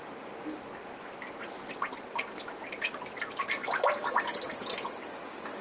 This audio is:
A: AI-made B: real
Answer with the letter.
B